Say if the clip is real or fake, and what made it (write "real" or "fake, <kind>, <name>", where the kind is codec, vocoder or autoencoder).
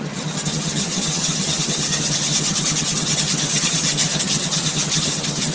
fake, vocoder, HiFi-GAN